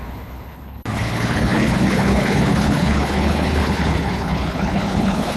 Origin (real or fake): fake